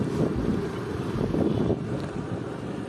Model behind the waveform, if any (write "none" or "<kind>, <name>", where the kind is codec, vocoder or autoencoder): none